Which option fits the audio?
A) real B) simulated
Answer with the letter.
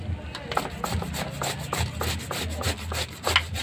A